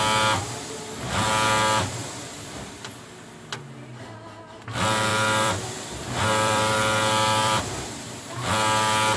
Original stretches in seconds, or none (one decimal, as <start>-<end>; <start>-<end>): 0.0-2.0; 2.8-5.1; 7.6-9.2